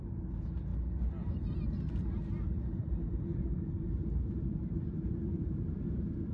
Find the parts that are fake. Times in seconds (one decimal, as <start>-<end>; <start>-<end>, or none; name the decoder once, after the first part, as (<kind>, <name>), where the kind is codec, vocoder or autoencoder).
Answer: 2.6-6.3 (vocoder, BigVGAN v2)

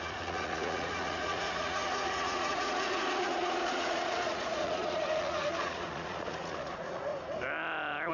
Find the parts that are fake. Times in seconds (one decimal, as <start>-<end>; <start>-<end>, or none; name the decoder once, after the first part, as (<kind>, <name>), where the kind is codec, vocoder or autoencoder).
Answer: 0.0-7.1 (vocoder, Vocos)

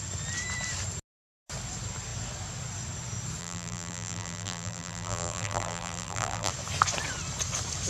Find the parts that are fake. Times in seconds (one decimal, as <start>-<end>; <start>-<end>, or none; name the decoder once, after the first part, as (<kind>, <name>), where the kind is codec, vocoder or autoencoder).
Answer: 3.4-6.5 (vocoder, BigVGAN v2)

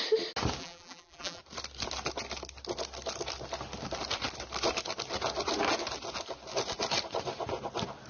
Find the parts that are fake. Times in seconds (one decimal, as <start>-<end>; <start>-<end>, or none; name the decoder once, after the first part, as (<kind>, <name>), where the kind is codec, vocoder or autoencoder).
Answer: 0.6-1.4 (vocoder, BigVGAN v2)